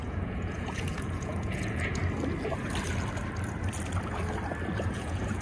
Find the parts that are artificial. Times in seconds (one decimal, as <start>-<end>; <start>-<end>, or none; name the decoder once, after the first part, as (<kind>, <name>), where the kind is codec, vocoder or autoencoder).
0.0-2.0 (vocoder, Vocos); 4.9-5.4